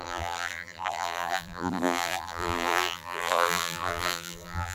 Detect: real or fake fake